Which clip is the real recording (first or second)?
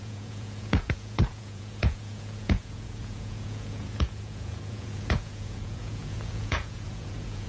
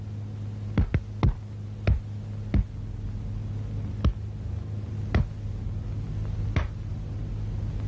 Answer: second